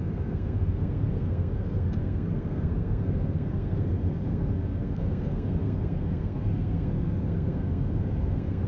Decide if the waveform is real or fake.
fake